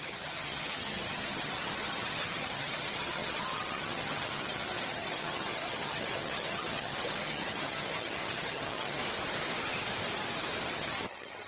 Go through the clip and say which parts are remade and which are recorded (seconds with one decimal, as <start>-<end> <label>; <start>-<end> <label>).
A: 0.0-9.0 remade; 9.0-10.7 recorded; 10.7-11.5 remade